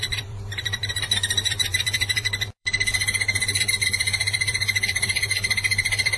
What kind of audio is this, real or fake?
fake